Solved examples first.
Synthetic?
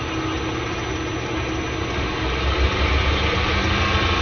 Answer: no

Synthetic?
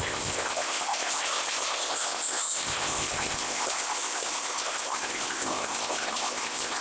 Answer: yes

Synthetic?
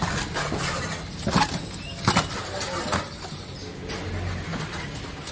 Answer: no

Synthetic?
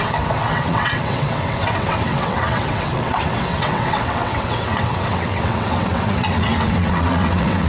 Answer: yes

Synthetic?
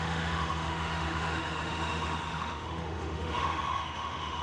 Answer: yes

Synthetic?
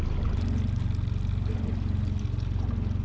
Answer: no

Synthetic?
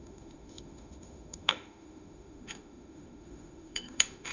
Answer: yes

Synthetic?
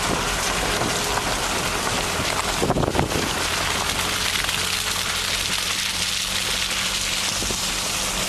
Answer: no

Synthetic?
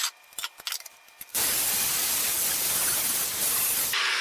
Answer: no